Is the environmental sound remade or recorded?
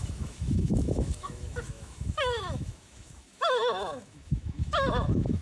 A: remade